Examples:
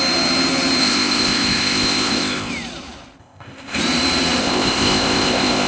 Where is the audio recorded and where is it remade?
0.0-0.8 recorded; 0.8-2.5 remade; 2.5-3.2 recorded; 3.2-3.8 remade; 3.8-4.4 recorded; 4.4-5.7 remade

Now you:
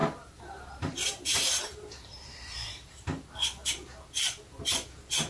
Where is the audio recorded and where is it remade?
0.0-2.9 remade; 2.9-5.3 recorded